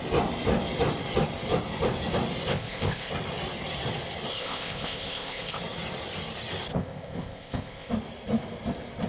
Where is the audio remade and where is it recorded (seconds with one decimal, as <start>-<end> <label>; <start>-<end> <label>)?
0.0-2.5 recorded; 2.5-3.1 remade; 3.1-4.3 recorded; 4.3-5.6 remade; 5.6-6.7 recorded; 6.7-7.9 remade; 7.9-9.1 recorded